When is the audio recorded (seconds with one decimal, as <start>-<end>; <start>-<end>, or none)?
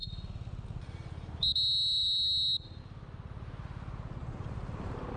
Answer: 0.0-4.2